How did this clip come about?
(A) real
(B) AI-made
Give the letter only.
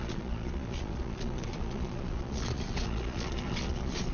B